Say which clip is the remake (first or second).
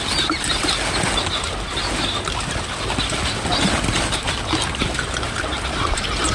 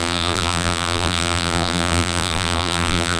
second